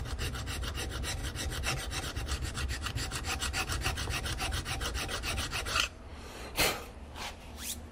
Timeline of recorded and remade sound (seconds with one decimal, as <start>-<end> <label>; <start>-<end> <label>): 0.0-1.2 remade; 1.2-2.0 recorded; 2.0-7.9 remade